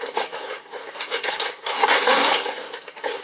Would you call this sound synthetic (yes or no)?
yes